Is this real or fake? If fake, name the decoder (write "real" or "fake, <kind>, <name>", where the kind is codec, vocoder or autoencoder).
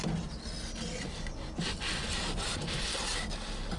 real